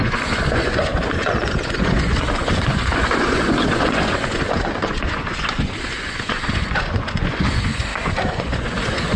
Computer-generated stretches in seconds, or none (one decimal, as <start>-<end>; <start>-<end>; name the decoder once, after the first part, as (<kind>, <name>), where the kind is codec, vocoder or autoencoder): 0.0-9.2 (vocoder, Vocos)